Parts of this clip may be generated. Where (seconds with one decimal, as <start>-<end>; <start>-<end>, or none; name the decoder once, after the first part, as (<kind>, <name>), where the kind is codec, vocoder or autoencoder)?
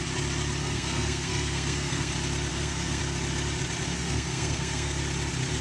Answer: 0.6-2.1 (codec, SNAC); 2.5-3.0; 3.9-5.0